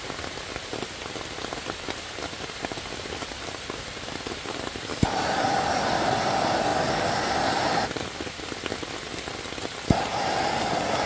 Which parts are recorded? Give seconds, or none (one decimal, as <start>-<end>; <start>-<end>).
0.0-11.1